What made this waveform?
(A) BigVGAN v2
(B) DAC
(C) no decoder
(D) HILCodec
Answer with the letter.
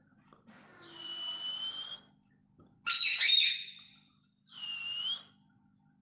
C